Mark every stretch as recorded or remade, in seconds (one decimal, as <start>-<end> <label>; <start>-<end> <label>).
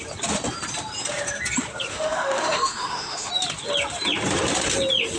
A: 0.0-1.9 recorded; 1.9-3.3 remade; 3.3-5.2 recorded